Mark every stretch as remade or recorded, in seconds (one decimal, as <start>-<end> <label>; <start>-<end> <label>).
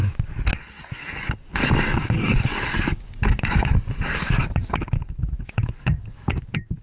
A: 0.0-6.8 remade